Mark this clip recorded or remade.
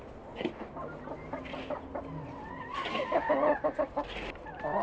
recorded